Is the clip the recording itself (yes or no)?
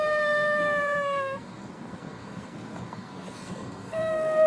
no